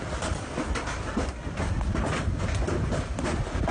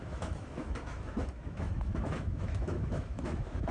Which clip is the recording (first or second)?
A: first